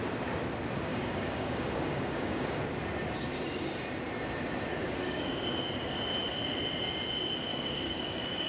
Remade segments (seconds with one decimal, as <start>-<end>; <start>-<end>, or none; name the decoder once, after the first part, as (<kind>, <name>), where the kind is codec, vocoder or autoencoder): 0.9-2.6 (codec, DAC); 4.7-5.5; 7.5-8.5